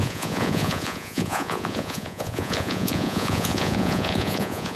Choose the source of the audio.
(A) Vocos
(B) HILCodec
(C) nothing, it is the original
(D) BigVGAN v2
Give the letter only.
A